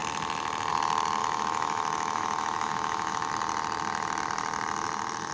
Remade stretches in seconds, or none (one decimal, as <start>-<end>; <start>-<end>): 1.2-3.3

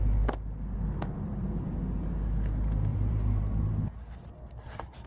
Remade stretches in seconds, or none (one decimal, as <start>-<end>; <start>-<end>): 2.9-3.7

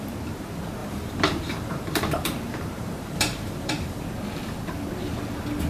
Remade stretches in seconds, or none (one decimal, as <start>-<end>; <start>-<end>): 0.8-4.1